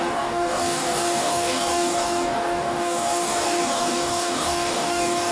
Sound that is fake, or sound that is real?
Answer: fake